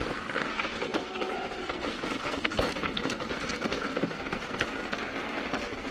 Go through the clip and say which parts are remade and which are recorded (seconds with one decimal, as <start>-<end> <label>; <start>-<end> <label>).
0.0-5.9 remade

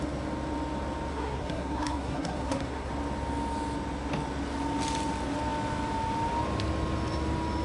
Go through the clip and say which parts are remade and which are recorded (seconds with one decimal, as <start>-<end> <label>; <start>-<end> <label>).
0.0-1.1 recorded; 1.1-2.9 remade; 2.9-7.6 recorded

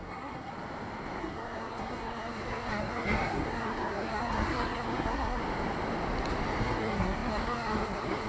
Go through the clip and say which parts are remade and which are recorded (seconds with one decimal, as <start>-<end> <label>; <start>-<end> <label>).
0.0-0.5 remade; 0.5-1.2 recorded; 1.2-5.4 remade; 5.4-6.6 recorded; 6.6-8.3 remade

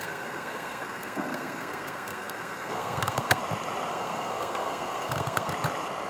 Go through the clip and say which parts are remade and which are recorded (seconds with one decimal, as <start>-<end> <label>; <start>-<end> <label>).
0.0-3.4 remade; 3.4-3.9 recorded; 3.9-5.5 remade; 5.5-6.1 recorded